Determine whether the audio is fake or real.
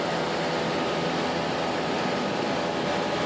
real